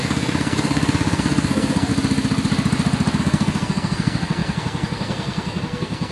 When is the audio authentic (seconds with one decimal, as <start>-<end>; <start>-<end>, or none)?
1.9-3.2